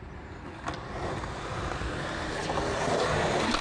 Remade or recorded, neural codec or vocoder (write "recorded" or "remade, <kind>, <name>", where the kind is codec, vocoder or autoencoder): recorded